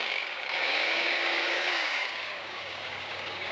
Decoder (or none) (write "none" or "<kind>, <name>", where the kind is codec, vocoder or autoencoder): codec, DAC